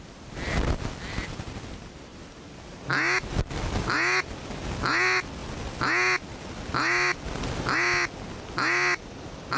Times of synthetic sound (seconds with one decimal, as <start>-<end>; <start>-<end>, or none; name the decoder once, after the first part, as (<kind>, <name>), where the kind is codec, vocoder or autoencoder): none